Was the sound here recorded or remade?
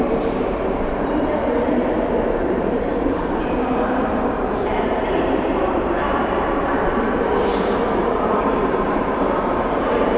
remade